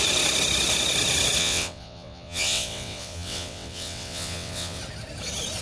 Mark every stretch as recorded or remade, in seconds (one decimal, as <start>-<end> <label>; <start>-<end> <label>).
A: 0.0-1.4 recorded; 1.4-4.8 remade; 4.8-5.6 recorded